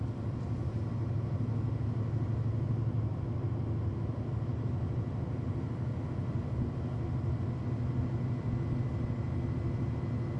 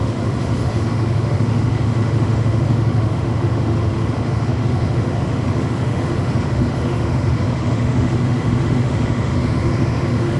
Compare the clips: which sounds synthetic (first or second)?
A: second